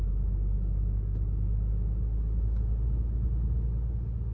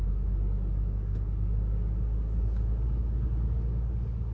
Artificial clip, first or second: second